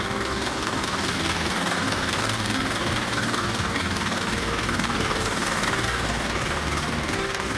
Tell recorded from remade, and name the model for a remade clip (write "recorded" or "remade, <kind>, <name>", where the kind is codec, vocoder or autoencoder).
remade, codec, DAC